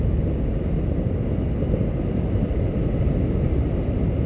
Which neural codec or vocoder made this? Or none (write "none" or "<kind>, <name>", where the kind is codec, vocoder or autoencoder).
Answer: none